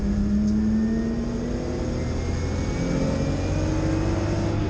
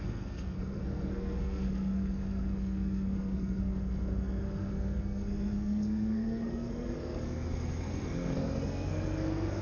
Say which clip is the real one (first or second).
first